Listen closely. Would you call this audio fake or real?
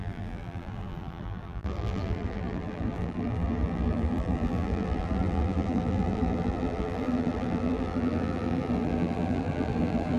fake